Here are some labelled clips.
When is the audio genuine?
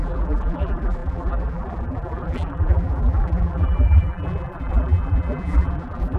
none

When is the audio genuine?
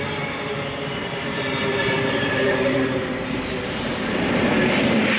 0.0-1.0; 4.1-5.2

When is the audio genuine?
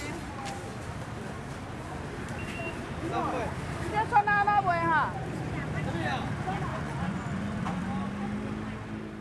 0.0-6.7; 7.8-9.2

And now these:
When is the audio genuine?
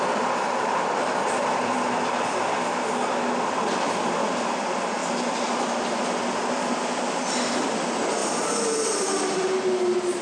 8.2-9.0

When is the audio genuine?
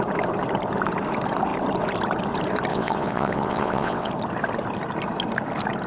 0.0-2.7; 4.1-5.9